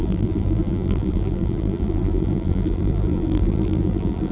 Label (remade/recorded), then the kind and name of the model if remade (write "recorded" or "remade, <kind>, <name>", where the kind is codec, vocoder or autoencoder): remade, vocoder, BigVGAN v2